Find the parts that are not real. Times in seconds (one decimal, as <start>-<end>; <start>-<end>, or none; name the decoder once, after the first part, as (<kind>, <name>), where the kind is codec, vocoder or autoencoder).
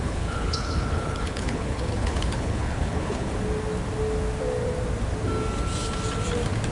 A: 0.0-3.3 (codec, HILCodec)